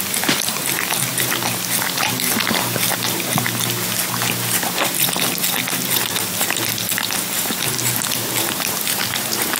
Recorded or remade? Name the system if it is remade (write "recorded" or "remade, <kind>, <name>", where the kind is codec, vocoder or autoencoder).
recorded